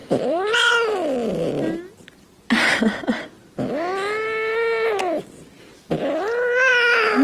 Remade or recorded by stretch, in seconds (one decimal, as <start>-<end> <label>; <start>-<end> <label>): 0.0-0.7 remade; 0.7-7.2 recorded